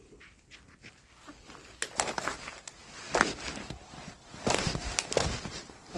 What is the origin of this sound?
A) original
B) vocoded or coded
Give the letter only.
A